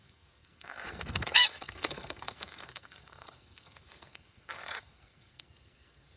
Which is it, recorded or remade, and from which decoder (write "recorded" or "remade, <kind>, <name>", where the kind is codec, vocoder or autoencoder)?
remade, codec, SNAC